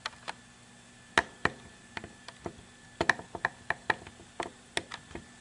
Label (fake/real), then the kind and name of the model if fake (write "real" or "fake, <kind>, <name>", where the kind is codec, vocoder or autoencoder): real